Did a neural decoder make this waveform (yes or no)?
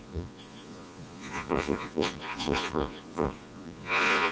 yes